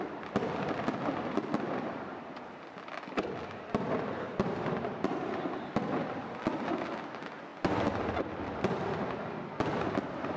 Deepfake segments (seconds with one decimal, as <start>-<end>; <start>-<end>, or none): none